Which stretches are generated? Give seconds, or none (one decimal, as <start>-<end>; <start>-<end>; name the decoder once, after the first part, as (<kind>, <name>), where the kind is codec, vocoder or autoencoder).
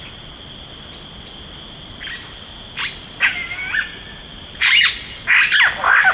4.3-4.9 (vocoder, BigVGAN v2)